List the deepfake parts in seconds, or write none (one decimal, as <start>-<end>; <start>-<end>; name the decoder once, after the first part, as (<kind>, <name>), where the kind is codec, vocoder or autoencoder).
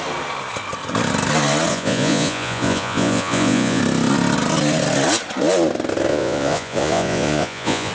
1.7-3.8 (vocoder, Vocos); 6.1-7.9